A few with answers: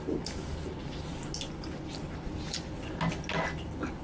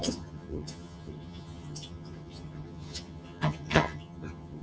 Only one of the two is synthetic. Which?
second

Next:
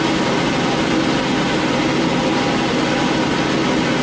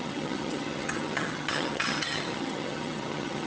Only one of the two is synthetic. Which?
second